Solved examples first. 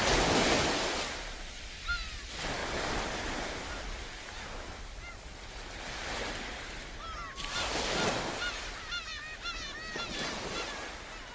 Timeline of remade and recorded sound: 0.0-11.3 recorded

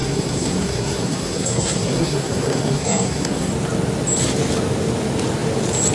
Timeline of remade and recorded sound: 0.0-3.5 remade; 3.5-5.9 recorded

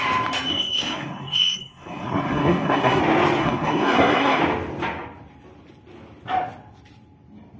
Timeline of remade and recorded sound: 0.0-0.5 recorded; 0.5-3.0 remade; 3.0-3.4 recorded; 3.4-4.4 remade; 4.4-7.6 recorded

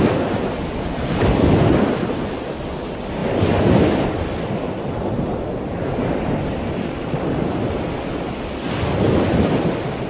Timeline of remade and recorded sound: 0.0-10.1 recorded

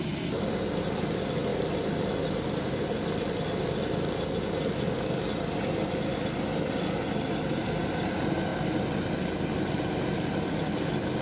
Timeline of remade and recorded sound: 0.0-11.2 recorded

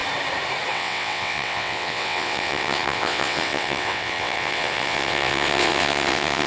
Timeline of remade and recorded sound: 0.0-0.7 recorded; 0.7-6.5 remade